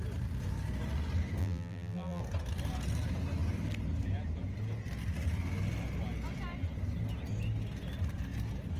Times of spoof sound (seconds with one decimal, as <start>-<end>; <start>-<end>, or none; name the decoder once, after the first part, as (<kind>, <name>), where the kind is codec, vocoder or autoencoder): 1.4-2.2 (vocoder, BigVGAN v2)